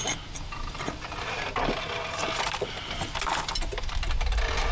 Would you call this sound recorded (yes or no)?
yes